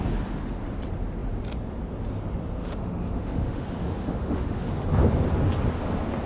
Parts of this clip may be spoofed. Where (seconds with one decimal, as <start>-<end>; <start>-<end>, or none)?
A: 2.6-4.7